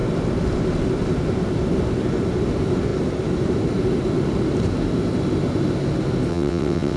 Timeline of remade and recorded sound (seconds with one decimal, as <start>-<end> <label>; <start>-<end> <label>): 0.0-6.3 recorded; 6.3-7.0 remade